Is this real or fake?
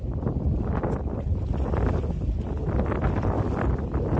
real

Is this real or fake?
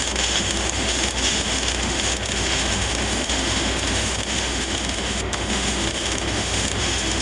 fake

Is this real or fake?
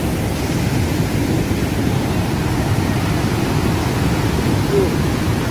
real